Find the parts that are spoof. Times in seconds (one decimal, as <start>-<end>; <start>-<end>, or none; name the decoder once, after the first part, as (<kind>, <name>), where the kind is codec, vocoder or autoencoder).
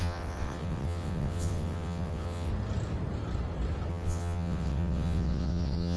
0.0-2.5 (vocoder, WaveNeXt); 3.9-6.0